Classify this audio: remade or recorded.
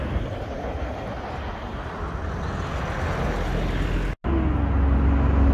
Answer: recorded